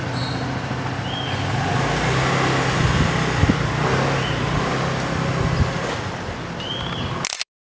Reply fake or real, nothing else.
real